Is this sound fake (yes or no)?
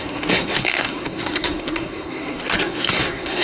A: yes